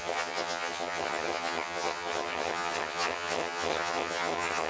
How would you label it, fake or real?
fake